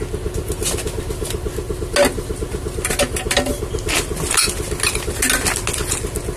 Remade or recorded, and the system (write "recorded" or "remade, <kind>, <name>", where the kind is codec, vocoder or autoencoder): recorded